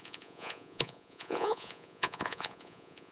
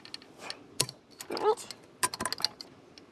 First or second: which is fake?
first